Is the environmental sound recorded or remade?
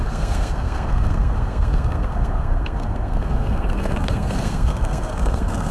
remade